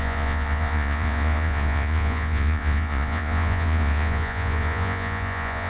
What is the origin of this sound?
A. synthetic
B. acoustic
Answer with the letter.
A